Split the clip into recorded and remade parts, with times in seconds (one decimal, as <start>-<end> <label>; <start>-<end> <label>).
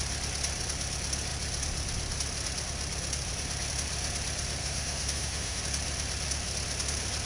0.0-4.6 recorded; 4.6-5.6 remade; 5.6-7.3 recorded